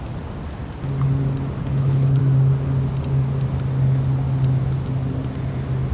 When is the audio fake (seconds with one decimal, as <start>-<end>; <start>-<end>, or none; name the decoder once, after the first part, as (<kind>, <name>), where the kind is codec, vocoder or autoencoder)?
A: 1.6-2.2 (codec, HILCodec)